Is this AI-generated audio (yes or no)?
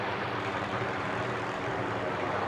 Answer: yes